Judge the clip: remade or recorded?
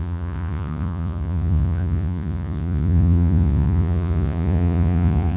remade